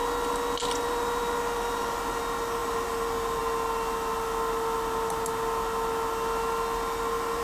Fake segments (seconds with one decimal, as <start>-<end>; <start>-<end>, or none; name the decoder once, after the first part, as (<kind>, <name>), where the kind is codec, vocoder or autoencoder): 0.0-2.2 (vocoder, BigVGAN v2); 2.6-3.4

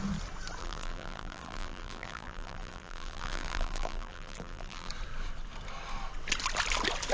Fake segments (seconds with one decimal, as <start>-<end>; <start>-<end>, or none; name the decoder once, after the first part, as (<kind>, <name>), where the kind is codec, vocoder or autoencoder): 0.6-4.9 (vocoder, BigVGAN v2)

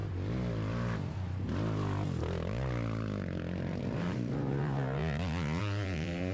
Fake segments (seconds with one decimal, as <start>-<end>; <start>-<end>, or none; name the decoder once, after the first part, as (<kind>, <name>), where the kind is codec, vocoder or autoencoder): 3.8-5.0 (vocoder, BigVGAN v2); 5.6-6.3

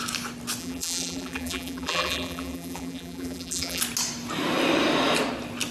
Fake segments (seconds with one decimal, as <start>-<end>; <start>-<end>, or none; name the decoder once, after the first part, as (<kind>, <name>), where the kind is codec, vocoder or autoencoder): 0.6-3.8 (vocoder, BigVGAN v2)

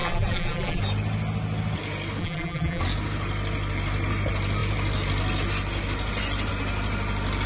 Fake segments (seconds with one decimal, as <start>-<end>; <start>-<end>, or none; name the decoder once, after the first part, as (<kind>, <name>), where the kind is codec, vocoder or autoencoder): 0.0-0.8 (vocoder, BigVGAN v2); 2.2-2.8

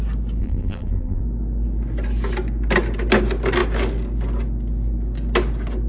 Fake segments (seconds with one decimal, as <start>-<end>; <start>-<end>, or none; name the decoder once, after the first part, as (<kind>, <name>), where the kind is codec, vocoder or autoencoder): 0.4-1.2 (vocoder, BigVGAN v2)

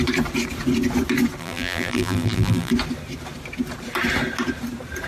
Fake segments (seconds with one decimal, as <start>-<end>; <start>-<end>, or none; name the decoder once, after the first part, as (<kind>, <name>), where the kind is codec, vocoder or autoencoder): 1.4-2.7 (vocoder, BigVGAN v2)